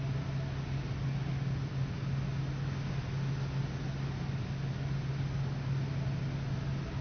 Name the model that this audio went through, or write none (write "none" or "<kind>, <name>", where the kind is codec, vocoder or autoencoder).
none